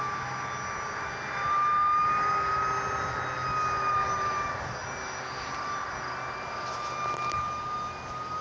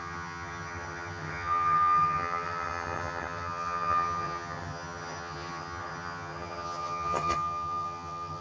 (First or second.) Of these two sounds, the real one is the first